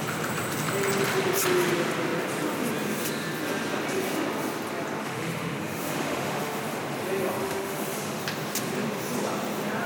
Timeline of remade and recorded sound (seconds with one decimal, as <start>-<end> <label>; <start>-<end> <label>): 0.0-5.0 recorded; 5.0-6.6 remade; 6.6-7.4 recorded; 7.4-8.2 remade; 8.2-9.9 recorded